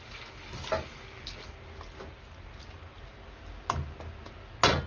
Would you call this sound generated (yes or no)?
no